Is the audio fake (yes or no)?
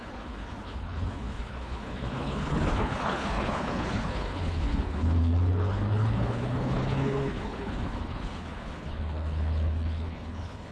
yes